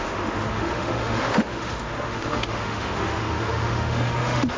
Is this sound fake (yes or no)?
yes